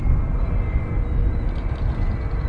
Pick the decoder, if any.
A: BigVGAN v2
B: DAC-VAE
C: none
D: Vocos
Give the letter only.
C